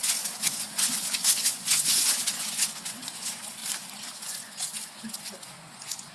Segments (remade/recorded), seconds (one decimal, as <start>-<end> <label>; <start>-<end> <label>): 0.0-3.6 remade; 3.6-4.2 recorded; 4.2-6.1 remade